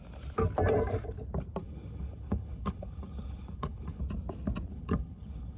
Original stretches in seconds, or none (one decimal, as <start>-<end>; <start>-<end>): 0.0-1.6; 4.0-4.7

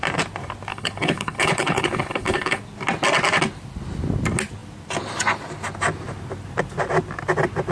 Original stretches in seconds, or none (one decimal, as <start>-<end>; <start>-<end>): 0.0-0.7; 2.6-7.7